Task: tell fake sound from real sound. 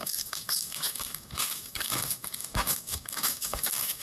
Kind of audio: fake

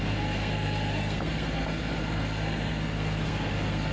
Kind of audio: fake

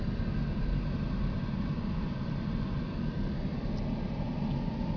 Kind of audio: real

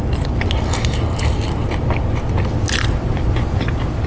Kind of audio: real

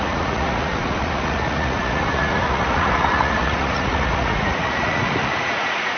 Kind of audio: fake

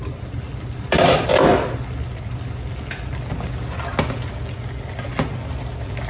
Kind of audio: real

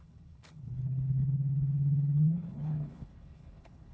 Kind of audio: fake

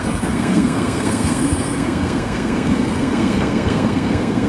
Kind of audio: fake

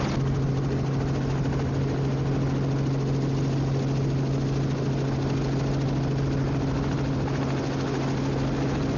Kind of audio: real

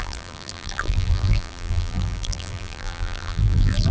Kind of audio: fake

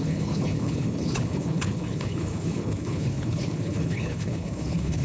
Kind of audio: fake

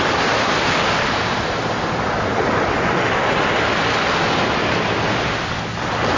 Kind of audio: real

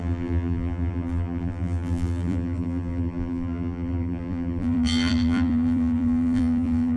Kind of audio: fake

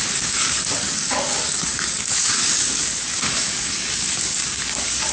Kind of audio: fake